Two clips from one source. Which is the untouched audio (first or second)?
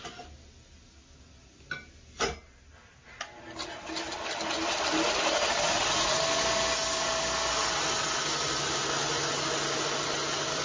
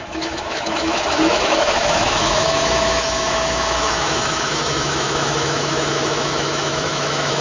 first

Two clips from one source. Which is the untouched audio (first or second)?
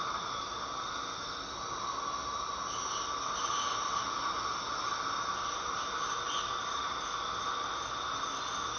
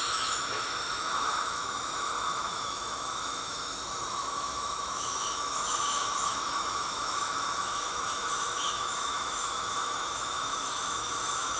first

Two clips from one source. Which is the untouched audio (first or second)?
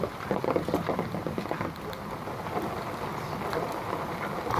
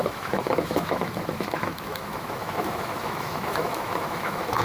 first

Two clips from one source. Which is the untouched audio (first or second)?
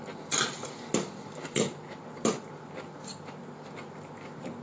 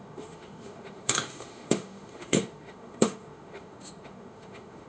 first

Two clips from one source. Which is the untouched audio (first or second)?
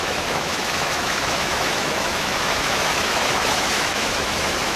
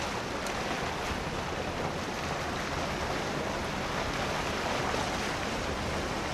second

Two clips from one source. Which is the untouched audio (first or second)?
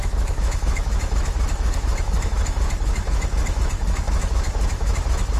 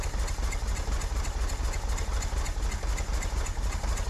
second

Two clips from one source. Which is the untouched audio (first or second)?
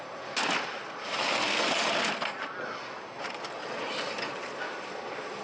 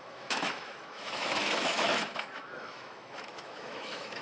first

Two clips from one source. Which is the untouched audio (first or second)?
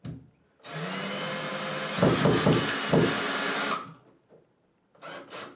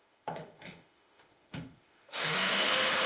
first